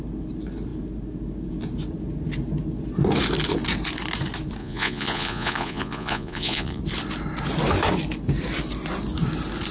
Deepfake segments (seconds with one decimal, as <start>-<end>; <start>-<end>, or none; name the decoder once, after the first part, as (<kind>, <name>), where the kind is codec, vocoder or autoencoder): 4.6-6.8 (vocoder, Vocos)